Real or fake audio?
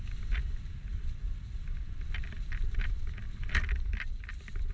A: real